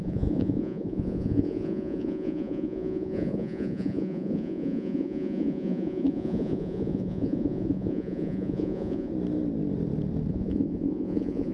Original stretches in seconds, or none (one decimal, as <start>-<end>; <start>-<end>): 9.1-10.3